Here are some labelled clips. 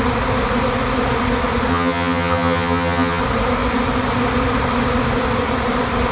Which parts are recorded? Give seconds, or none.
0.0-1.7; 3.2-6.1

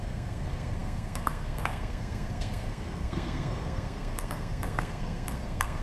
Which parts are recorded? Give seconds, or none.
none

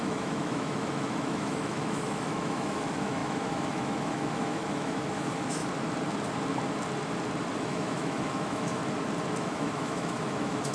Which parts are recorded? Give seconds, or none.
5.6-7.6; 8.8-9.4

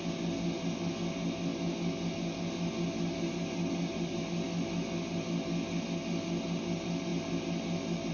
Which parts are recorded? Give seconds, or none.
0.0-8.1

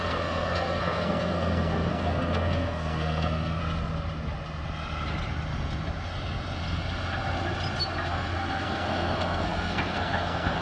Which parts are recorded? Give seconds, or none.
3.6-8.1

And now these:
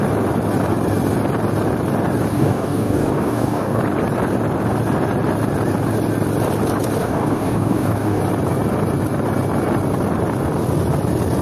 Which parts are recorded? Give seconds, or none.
0.0-2.3; 3.8-7.0; 8.2-11.4